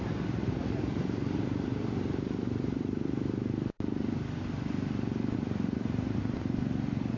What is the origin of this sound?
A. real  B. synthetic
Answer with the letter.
B